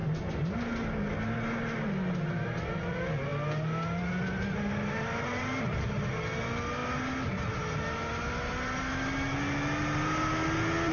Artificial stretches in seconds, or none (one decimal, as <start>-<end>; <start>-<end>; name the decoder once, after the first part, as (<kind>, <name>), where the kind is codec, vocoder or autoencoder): none